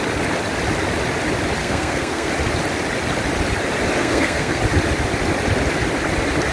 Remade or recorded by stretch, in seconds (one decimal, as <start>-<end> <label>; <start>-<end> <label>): 0.0-1.6 recorded; 1.6-2.3 remade; 2.3-4.0 recorded; 4.0-4.6 remade; 4.6-6.5 recorded